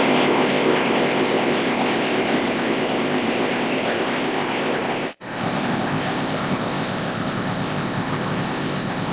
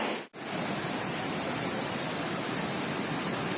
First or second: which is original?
second